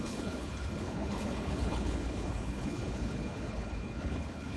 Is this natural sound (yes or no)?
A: no